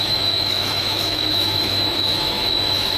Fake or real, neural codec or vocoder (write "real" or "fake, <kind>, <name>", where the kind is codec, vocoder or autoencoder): fake, autoencoder, DAC-VAE